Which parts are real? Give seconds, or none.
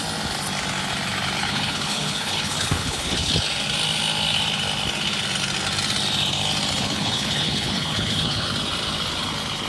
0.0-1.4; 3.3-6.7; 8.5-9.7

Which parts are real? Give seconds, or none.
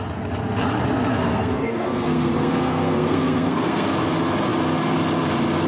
0.0-1.1; 3.9-5.7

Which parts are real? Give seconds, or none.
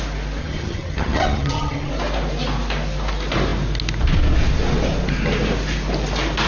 0.0-0.4; 1.9-6.5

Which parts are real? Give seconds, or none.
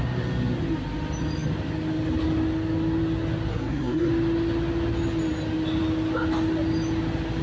0.0-3.5; 4.1-7.4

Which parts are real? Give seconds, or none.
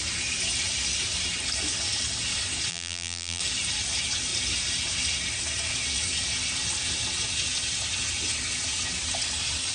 0.0-2.7; 3.4-9.7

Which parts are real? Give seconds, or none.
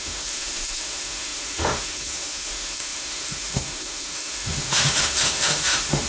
none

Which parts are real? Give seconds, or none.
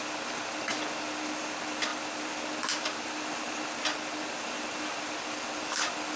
0.0-6.2